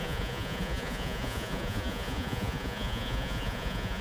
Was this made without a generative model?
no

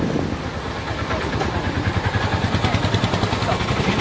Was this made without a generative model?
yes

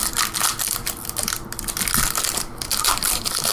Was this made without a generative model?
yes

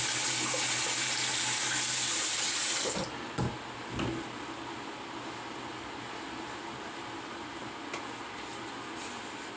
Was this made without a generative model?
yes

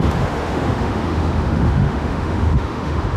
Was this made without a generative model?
no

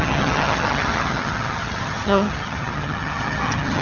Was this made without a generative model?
no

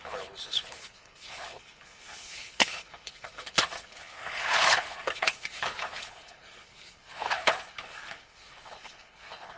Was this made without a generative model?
no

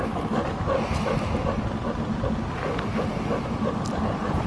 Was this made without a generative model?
yes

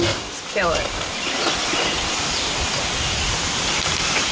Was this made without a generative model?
yes